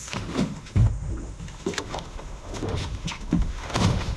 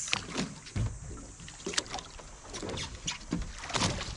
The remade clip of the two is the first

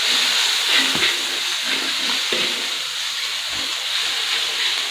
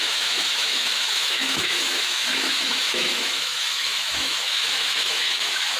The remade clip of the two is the second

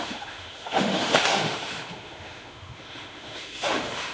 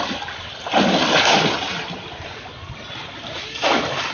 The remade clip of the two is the first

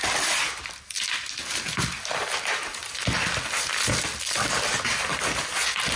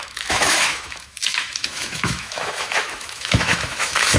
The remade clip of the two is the second